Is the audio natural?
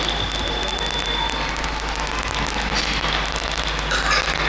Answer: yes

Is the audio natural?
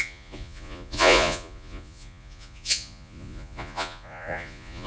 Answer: no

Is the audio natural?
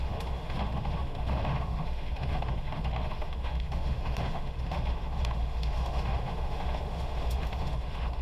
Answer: no